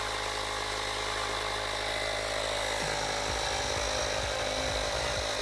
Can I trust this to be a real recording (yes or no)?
yes